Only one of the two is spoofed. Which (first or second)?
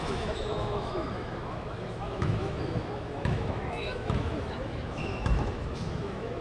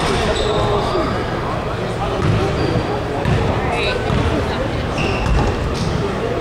first